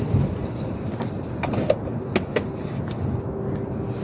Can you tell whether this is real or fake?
real